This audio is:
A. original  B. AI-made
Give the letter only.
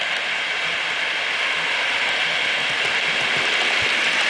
A